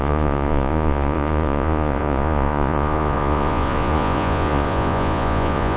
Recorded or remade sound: remade